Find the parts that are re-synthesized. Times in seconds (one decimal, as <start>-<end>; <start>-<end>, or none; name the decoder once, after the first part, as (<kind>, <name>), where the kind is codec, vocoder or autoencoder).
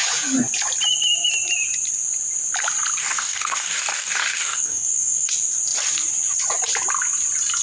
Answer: 3.0-5.3 (codec, DAC)